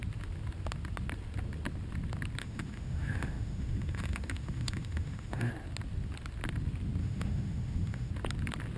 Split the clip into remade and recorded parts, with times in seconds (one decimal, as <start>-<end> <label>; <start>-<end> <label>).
0.0-2.4 recorded; 2.4-5.5 remade; 5.5-7.0 recorded; 7.0-8.1 remade; 8.1-8.8 recorded